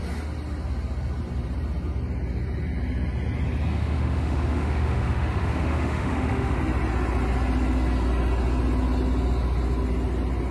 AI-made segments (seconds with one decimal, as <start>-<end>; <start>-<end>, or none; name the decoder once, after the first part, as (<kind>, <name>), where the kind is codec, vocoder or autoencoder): 3.7-6.6 (autoencoder, DAC-VAE)